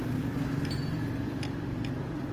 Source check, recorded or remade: recorded